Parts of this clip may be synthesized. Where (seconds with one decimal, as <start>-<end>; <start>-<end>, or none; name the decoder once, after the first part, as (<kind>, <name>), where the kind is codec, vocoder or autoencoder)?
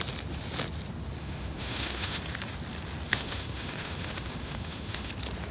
1.2-2.2 (autoencoder, DAC-VAE); 3.1-5.1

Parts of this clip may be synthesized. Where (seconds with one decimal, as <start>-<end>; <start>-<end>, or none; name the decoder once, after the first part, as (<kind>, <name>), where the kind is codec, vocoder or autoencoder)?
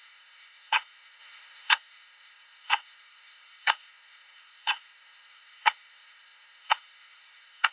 0.0-7.7 (codec, SNAC)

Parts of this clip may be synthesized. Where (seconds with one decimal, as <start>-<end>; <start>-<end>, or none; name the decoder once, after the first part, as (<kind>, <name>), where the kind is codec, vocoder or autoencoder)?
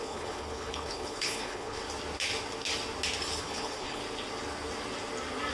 0.0-1.8 (codec, HILCodec); 3.4-4.0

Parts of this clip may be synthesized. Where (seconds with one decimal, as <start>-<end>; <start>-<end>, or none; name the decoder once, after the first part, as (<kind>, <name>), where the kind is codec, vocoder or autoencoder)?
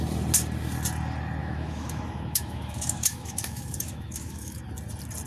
1.4-4.6 (autoencoder, DAC-VAE)